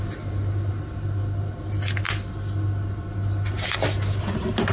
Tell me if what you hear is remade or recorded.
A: recorded